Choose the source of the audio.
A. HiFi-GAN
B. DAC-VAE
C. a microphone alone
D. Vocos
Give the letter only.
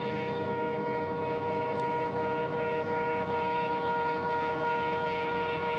B